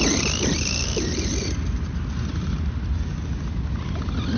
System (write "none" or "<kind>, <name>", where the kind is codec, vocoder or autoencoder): none